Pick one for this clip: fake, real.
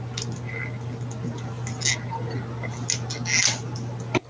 real